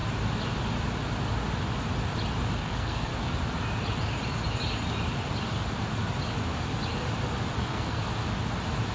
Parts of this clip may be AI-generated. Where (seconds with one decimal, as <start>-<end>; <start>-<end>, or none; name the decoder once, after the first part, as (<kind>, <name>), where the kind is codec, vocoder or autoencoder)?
2.6-3.1 (codec, SNAC); 7.6-8.0